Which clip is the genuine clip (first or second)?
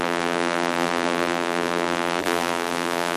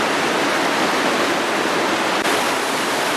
second